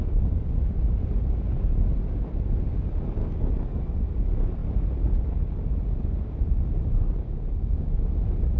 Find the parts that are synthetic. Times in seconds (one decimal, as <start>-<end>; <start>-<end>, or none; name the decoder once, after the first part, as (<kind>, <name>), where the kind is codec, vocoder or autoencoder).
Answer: 3.2-3.8 (codec, DAC)